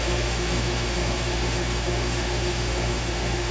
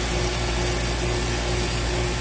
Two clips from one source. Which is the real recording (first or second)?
second